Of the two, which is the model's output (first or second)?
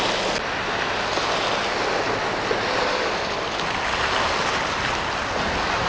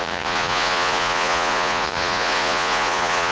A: second